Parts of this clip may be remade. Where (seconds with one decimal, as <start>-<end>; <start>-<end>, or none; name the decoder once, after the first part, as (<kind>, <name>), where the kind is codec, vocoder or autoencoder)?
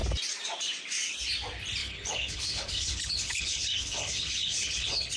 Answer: 1.8-5.2 (codec, HILCodec)